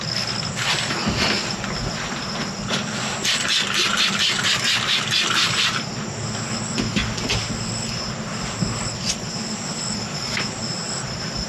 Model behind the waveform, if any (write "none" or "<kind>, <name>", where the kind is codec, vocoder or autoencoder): none